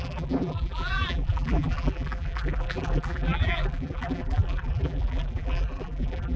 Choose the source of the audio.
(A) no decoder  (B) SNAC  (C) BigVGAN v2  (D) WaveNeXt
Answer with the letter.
C